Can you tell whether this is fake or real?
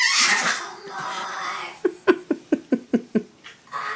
real